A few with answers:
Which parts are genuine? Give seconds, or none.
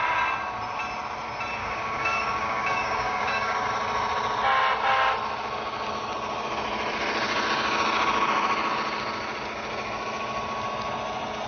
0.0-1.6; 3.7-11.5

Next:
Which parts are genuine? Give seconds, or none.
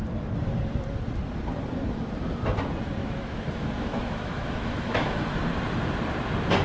0.0-3.0; 5.2-6.6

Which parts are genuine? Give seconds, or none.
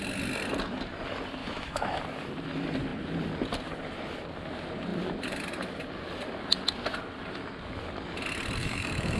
0.0-1.4; 2.0-8.6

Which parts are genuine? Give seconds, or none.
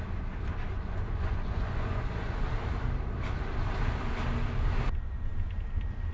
0.0-0.7; 2.5-6.1